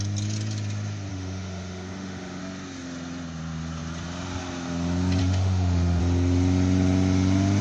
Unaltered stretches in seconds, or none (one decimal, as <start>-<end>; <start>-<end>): 0.0-1.1; 2.4-5.2; 6.0-7.6